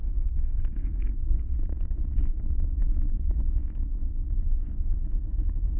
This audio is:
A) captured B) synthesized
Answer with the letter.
B